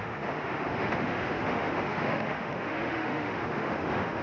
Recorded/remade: remade